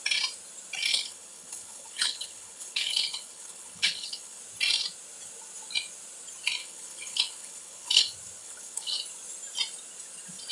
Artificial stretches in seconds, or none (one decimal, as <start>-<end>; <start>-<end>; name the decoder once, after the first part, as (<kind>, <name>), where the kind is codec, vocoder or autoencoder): 0.9-4.4 (codec, HILCodec); 6.6-8.0; 8.4-8.9

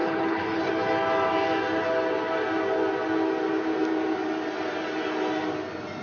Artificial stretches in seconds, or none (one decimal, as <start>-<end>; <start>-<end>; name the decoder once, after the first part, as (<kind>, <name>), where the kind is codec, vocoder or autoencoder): 0.0-0.7 (codec, HILCodec)